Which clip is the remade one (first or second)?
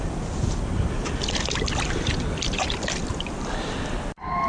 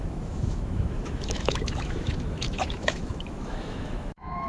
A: second